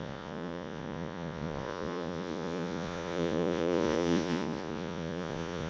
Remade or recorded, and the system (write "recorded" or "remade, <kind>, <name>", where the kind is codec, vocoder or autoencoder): remade, vocoder, Vocos